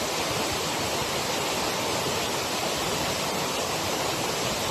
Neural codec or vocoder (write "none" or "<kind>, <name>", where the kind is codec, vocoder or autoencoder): none